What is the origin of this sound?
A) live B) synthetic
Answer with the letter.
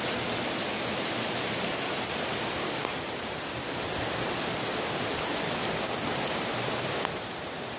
B